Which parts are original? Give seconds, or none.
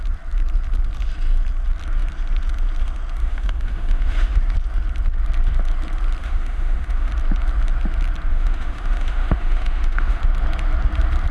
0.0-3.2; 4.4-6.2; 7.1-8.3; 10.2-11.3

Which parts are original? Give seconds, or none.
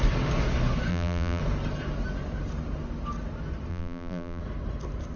0.0-0.9; 1.4-3.7; 4.4-5.2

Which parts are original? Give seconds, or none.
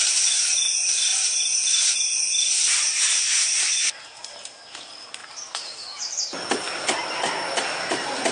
0.0-7.0; 7.6-8.3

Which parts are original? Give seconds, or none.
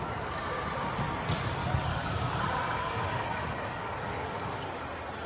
0.0-1.6; 4.8-5.3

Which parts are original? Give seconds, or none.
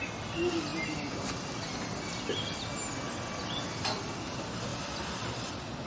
0.0-4.7; 5.5-5.9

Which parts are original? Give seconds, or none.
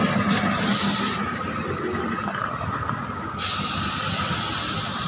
0.0-5.1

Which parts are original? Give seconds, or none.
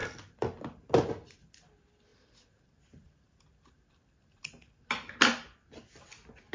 0.0-6.5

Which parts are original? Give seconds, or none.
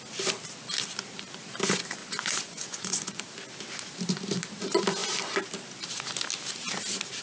0.0-2.0; 3.2-7.2